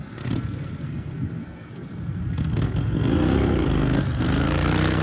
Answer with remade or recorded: remade